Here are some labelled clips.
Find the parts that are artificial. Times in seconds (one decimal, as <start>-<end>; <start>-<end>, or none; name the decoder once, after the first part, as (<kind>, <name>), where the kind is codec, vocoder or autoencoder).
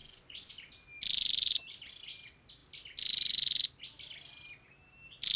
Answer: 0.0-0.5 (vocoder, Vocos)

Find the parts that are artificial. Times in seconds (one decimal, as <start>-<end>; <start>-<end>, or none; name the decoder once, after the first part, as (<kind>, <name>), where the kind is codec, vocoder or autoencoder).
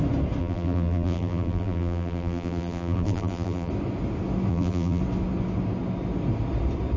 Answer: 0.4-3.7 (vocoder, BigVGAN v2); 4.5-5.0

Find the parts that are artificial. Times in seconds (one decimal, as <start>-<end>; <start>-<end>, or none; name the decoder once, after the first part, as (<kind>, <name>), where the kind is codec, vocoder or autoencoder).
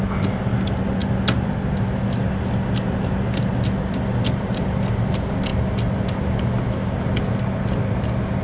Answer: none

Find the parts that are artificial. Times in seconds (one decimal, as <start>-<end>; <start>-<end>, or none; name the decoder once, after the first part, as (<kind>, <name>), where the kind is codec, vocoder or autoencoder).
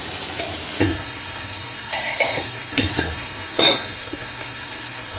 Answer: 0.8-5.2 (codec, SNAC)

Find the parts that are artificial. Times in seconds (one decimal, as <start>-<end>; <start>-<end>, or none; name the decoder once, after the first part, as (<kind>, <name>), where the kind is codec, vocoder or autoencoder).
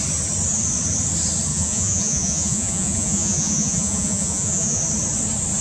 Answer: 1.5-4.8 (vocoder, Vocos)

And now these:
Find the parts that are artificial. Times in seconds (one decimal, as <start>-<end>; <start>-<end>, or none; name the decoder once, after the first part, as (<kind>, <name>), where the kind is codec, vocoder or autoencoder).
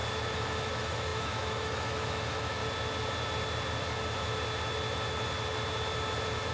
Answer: 0.7-2.6 (autoencoder, DAC-VAE)